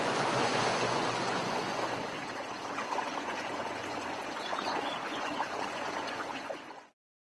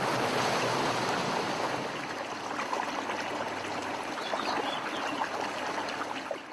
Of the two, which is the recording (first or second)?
second